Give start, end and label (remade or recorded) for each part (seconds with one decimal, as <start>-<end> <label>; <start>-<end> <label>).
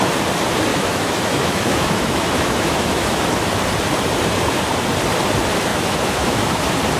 0.0-0.7 recorded; 0.7-3.3 remade; 3.3-5.7 recorded; 5.7-6.6 remade; 6.6-7.0 recorded